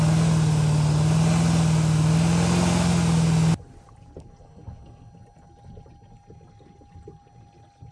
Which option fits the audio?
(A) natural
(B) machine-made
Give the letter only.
A